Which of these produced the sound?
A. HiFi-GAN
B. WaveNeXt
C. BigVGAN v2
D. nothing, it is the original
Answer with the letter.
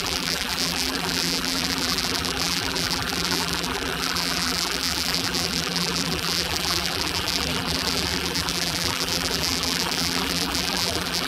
C